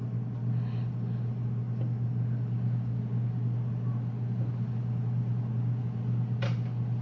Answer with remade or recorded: recorded